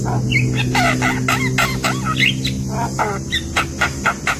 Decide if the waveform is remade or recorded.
recorded